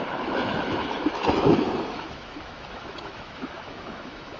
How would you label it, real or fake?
fake